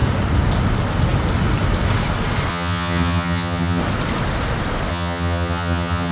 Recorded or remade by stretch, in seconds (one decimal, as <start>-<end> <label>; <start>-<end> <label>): 0.0-2.5 recorded; 2.5-3.8 remade; 3.8-4.9 recorded; 4.9-6.1 remade